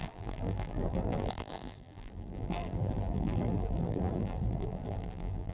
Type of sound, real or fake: fake